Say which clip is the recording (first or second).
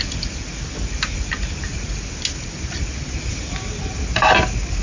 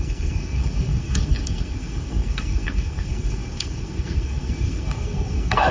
first